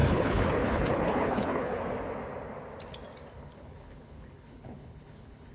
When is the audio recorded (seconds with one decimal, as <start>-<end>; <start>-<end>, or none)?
1.8-3.3